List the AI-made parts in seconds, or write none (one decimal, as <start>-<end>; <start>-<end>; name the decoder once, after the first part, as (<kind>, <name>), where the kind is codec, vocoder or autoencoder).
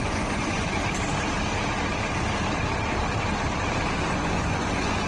0.0-0.8 (vocoder, Vocos); 3.9-5.1